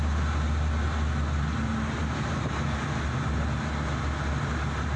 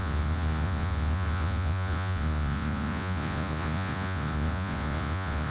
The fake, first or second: second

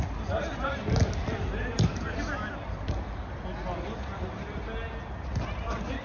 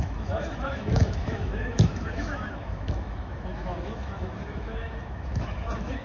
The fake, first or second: second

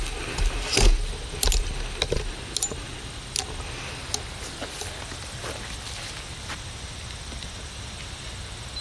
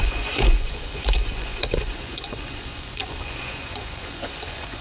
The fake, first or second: second